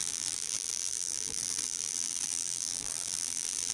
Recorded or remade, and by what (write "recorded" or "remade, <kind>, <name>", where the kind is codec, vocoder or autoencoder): remade, vocoder, BigVGAN v2